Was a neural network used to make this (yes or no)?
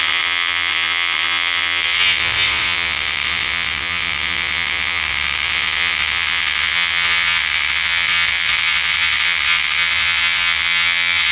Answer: yes